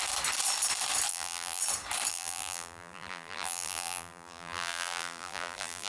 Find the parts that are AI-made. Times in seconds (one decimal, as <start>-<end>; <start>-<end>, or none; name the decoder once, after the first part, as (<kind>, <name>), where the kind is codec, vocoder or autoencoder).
1.1-1.6 (vocoder, BigVGAN v2); 2.1-5.9